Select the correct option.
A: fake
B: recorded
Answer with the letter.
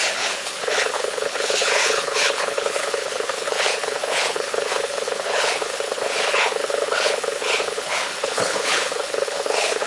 A